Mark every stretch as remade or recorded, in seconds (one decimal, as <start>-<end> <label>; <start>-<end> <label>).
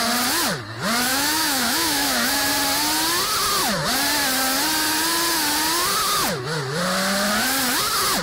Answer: 0.0-1.1 recorded; 1.1-2.5 remade; 2.5-8.2 recorded